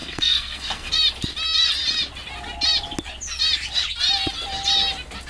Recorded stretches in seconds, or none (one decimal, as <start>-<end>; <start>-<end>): 0.9-5.3